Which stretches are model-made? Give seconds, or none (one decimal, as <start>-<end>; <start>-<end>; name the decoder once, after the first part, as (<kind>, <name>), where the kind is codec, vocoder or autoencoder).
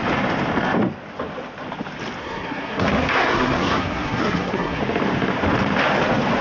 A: 2.2-4.8 (codec, SNAC)